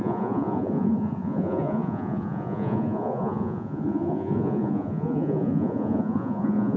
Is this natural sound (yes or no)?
no